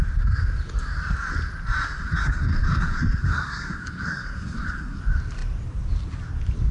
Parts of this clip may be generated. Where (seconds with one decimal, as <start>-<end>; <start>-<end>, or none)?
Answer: 2.0-5.0